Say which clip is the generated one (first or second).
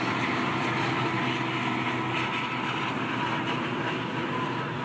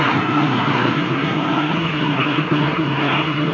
second